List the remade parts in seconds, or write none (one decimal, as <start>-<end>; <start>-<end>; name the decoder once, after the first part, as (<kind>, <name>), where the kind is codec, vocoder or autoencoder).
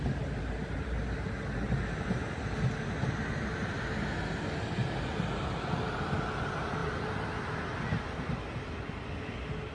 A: none